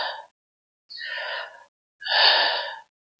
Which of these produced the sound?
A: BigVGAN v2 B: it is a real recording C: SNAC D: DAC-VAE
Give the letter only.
B